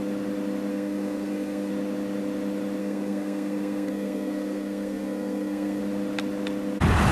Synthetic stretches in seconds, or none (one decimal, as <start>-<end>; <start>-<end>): 0.7-1.7; 2.8-5.8